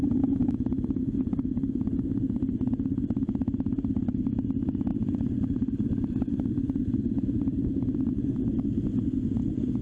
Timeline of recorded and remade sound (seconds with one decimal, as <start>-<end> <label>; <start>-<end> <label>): 0.0-4.9 recorded; 4.9-9.4 remade; 9.4-9.8 recorded